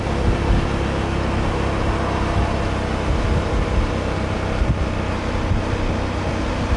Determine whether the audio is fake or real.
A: real